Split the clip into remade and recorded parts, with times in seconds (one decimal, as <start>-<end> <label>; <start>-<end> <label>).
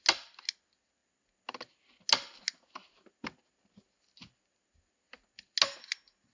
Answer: 0.0-6.3 recorded